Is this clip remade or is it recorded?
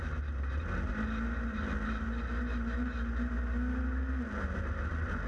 recorded